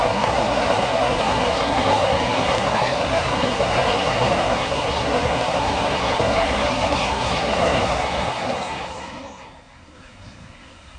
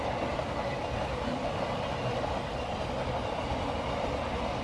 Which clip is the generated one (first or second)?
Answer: first